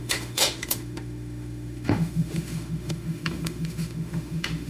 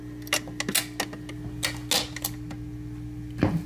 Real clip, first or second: second